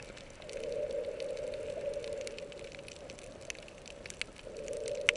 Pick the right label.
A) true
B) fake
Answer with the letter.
A